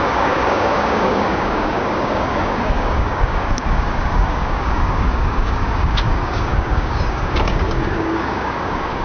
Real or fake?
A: fake